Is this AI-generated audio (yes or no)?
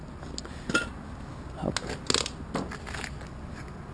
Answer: no